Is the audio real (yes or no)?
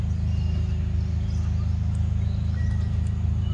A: yes